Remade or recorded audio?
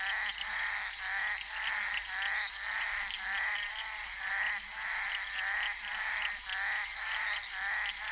recorded